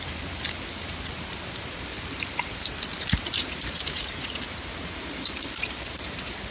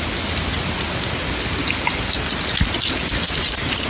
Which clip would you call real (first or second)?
second